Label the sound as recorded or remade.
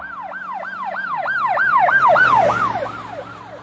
recorded